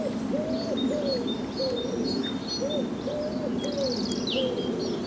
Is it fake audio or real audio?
real